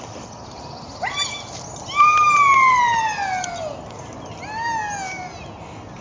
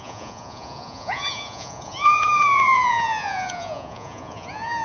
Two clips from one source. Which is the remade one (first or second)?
second